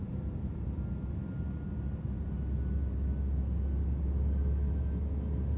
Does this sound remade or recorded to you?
recorded